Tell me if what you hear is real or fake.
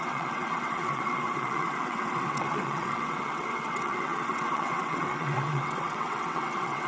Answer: fake